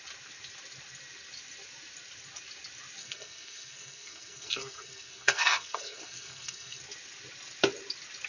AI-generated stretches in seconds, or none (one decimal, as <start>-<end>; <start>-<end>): 3.0-6.8